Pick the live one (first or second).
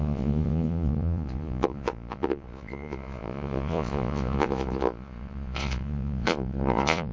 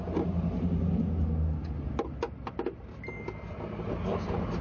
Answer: second